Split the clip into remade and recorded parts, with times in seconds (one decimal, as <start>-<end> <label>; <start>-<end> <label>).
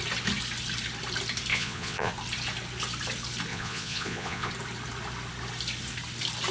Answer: 0.0-1.5 recorded; 1.5-2.1 remade; 2.1-3.5 recorded; 3.5-4.5 remade; 4.5-6.5 recorded